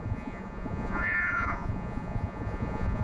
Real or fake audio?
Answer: fake